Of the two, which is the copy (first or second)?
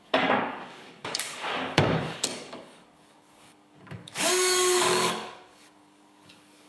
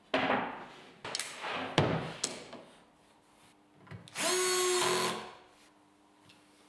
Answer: first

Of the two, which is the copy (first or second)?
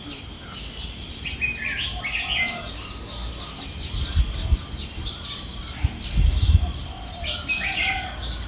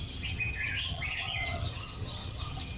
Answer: second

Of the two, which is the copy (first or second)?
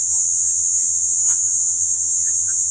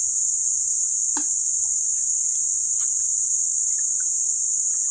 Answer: first